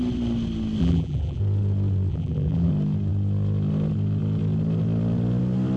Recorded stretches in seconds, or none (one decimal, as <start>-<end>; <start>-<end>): 0.0-0.8; 1.4-2.1; 2.7-5.8